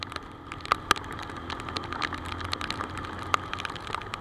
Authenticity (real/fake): real